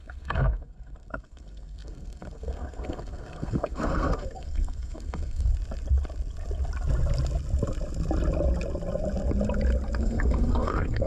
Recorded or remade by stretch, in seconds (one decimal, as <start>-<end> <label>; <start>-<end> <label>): 0.0-5.5 remade; 5.5-10.0 recorded; 10.0-11.1 remade